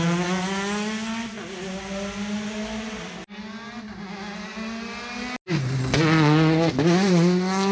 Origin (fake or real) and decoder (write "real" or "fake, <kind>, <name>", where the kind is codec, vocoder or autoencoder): real